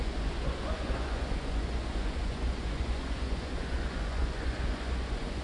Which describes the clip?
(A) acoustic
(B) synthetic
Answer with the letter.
B